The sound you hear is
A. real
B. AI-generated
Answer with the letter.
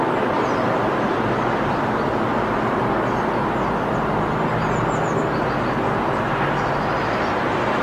A